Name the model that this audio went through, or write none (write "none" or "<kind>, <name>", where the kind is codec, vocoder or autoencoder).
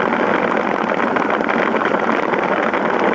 none